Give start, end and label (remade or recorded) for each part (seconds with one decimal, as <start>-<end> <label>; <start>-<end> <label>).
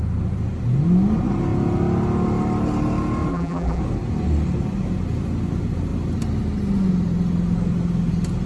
0.0-3.3 recorded; 3.3-3.8 remade; 3.8-8.5 recorded